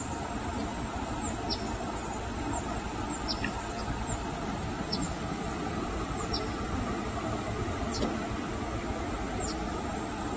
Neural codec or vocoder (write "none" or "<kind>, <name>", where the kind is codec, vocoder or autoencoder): none